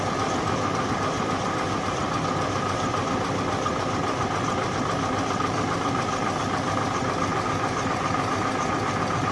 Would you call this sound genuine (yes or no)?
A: yes